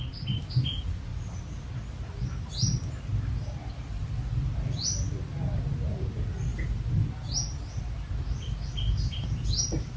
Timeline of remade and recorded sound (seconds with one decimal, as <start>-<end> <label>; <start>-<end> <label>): 0.0-10.0 recorded

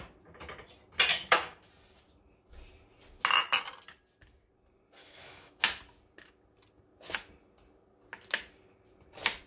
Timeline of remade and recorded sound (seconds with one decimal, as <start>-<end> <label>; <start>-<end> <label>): 0.0-1.1 recorded; 1.1-1.7 remade; 1.7-5.0 recorded; 5.0-5.6 remade; 5.6-9.5 recorded